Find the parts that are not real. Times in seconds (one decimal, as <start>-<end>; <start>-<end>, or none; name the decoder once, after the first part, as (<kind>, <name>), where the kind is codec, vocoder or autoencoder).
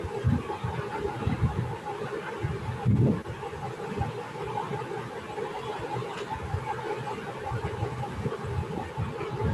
none